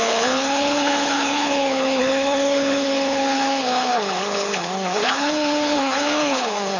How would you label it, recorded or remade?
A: remade